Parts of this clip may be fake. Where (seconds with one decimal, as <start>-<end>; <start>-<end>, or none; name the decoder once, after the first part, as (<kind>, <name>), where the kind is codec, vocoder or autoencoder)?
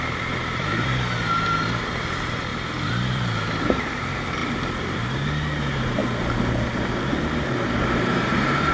0.0-2.5 (vocoder, BigVGAN v2); 3.1-6.0; 7.8-8.7